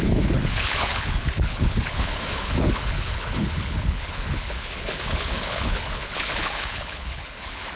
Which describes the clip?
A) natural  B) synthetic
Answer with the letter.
B